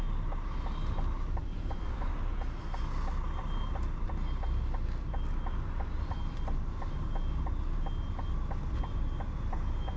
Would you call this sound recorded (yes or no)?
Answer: yes